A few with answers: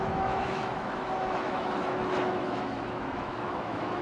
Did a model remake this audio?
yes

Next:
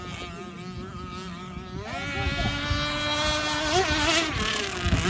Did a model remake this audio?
no